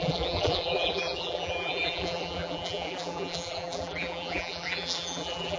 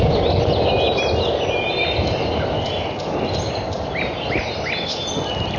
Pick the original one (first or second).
second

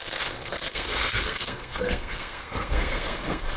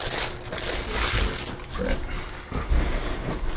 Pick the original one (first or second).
second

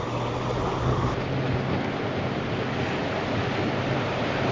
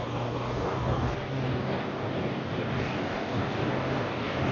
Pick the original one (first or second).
first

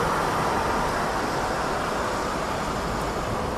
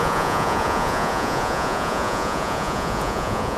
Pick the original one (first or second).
first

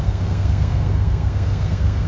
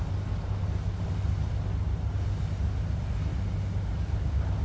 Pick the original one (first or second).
second